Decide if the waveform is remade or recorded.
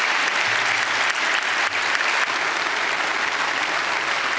recorded